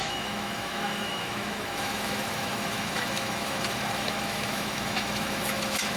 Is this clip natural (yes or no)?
no